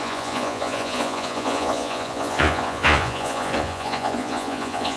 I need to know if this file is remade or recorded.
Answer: remade